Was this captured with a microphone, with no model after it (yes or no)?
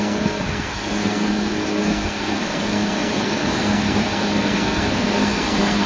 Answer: no